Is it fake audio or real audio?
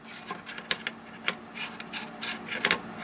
real